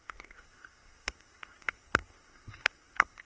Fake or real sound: fake